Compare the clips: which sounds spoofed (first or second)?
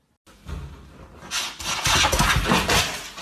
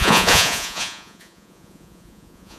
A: second